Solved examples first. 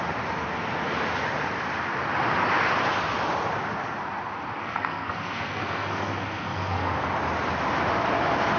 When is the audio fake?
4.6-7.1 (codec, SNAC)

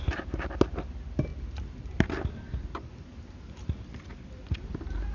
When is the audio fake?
none

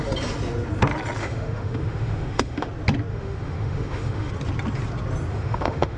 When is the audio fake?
1.2-2.7 (autoencoder, DAC-VAE); 3.1-4.3; 5.3-6.0

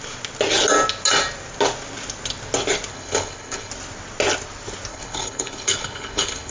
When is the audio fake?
2.9-3.7 (codec, HILCodec); 4.9-6.5

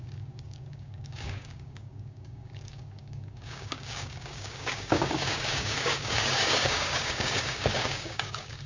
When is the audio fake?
0.0-8.7 (codec, DAC)

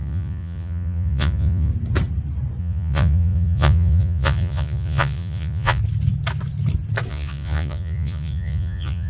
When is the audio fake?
0.0-1.7 (vocoder, Vocos); 2.6-5.8; 7.1-9.1

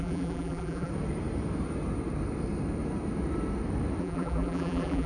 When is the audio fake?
0.0-0.9 (vocoder, BigVGAN v2); 4.0-5.1

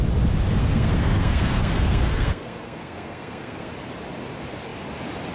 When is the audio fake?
0.6-3.7 (codec, SNAC)